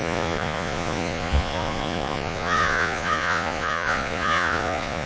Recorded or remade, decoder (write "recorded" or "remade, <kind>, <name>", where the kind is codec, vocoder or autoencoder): remade, vocoder, Vocos